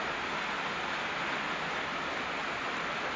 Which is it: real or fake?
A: real